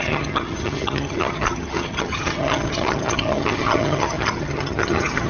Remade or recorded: remade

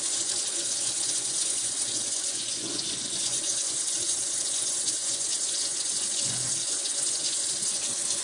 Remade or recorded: remade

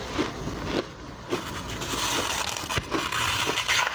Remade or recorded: recorded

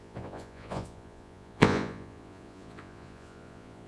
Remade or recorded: remade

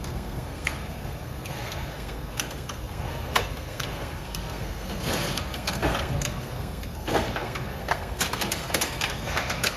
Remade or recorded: remade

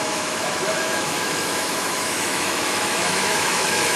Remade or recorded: remade